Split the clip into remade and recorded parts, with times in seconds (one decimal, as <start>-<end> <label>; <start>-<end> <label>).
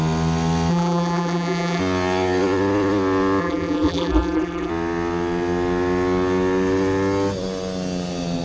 0.0-0.7 recorded; 0.7-1.8 remade; 1.8-3.4 recorded; 3.4-4.7 remade; 4.7-8.4 recorded